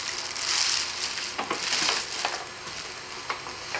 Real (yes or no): yes